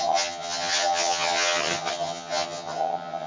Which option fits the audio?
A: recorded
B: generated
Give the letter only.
B